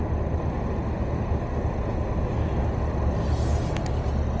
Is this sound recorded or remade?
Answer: recorded